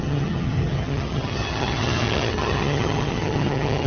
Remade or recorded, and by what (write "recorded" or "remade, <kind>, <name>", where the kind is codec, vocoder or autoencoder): remade, vocoder, HiFi-GAN